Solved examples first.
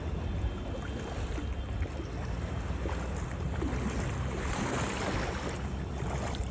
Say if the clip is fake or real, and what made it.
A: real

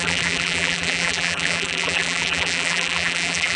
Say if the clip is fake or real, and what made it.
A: fake, vocoder, BigVGAN v2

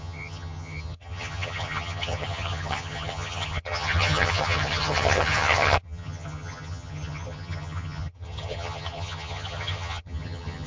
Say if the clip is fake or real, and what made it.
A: fake, vocoder, HiFi-GAN